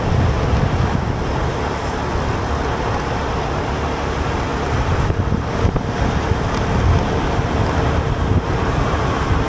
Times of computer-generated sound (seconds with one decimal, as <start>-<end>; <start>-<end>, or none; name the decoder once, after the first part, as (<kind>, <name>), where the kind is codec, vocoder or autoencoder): none